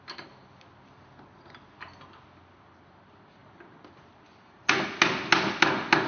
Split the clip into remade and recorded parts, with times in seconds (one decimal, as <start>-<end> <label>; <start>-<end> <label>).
0.0-3.4 recorded; 3.4-4.7 remade; 4.7-6.1 recorded